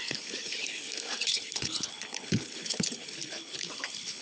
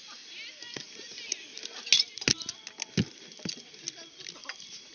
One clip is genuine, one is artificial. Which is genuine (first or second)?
second